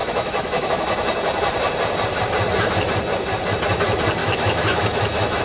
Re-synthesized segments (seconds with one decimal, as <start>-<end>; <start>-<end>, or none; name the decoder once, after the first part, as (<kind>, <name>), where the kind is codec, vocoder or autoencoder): 0.0-0.7 (autoencoder, DAC-VAE); 4.2-5.4